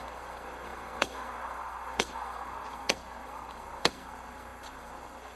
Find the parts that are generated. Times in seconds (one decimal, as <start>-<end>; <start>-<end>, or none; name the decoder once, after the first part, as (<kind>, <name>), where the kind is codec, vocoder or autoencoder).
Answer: 0.0-5.4 (codec, SNAC)